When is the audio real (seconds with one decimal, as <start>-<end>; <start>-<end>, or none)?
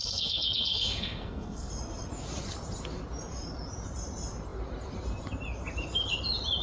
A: 1.7-6.6